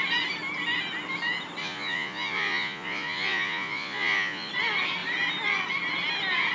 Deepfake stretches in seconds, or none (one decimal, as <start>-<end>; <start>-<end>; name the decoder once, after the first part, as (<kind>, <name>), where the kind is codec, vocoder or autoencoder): 1.6-4.5 (vocoder, Vocos)